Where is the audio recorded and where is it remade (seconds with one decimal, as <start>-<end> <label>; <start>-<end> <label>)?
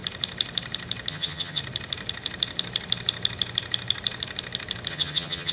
0.0-1.1 recorded; 1.1-1.6 remade; 1.6-4.9 recorded; 4.9-5.5 remade